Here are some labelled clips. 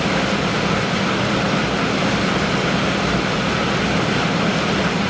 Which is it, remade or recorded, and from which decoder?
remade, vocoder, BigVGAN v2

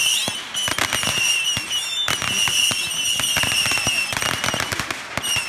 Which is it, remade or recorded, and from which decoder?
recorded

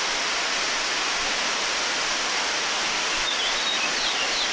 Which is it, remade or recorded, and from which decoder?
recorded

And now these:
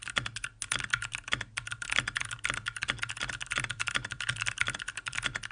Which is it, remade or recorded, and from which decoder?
recorded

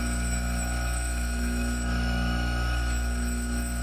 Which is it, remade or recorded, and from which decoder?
remade, autoencoder, DAC-VAE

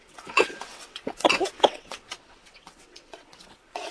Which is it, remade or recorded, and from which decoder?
remade, vocoder, WaveNeXt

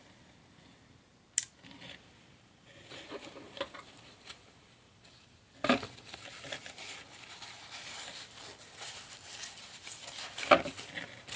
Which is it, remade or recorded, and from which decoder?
recorded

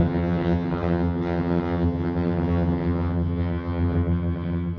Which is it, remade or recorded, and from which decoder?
remade, vocoder, HiFi-GAN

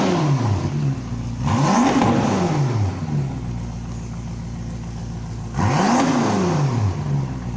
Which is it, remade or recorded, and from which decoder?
recorded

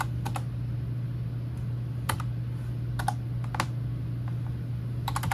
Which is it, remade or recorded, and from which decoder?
recorded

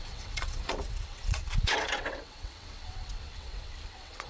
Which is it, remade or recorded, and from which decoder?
remade, vocoder, WaveNeXt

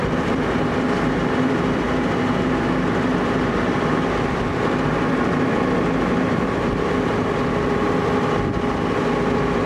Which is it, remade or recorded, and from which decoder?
remade, vocoder, BigVGAN v2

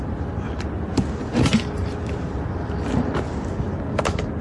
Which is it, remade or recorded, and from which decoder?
recorded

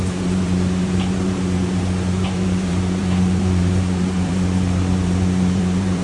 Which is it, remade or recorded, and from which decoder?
remade, vocoder, BigVGAN v2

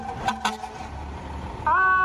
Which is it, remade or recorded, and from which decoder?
recorded